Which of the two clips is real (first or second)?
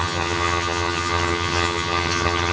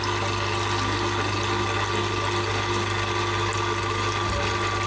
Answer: second